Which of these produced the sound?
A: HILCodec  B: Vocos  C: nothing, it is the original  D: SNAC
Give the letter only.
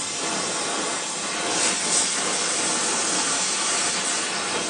C